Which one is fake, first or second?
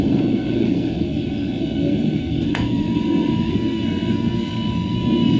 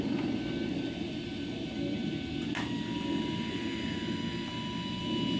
first